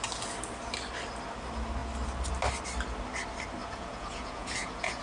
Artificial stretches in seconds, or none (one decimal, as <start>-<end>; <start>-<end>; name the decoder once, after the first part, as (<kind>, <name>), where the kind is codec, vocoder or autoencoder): 3.6-5.0 (vocoder, Vocos)